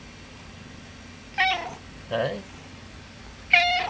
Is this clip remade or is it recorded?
recorded